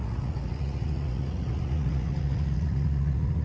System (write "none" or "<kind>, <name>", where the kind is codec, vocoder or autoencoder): vocoder, Vocos